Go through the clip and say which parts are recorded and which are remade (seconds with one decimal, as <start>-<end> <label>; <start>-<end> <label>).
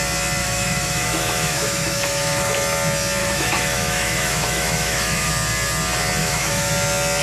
0.0-0.4 recorded; 0.4-2.5 remade; 2.5-3.2 recorded; 3.2-5.3 remade; 5.3-6.2 recorded; 6.2-6.7 remade; 6.7-7.2 recorded